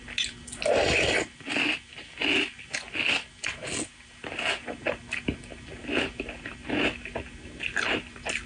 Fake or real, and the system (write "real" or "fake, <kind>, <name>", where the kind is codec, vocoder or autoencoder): real